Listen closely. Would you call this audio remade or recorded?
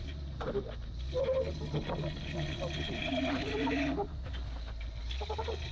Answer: recorded